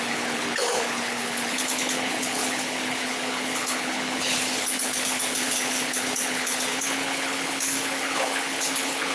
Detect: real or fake fake